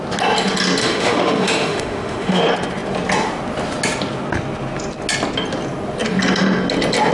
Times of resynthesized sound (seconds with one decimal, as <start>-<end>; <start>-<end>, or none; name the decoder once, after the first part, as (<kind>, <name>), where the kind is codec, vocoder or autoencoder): 0.8-2.4 (autoencoder, DAC-VAE)